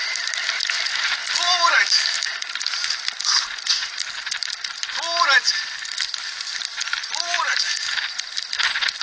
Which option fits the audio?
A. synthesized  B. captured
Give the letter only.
B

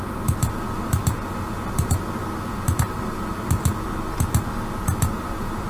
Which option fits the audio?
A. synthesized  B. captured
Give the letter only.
B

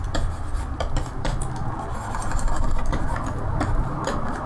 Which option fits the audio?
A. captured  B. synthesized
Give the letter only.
B